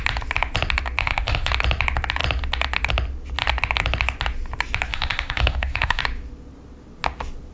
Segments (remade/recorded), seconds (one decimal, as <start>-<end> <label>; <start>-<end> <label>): 0.0-1.0 recorded; 1.0-1.5 remade; 1.5-4.9 recorded; 4.9-6.0 remade; 6.0-7.5 recorded